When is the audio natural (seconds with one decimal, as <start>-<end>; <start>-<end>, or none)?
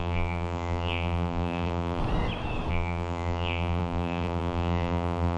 2.0-2.7